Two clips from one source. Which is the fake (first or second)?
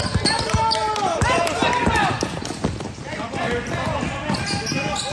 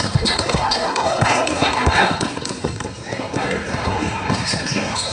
second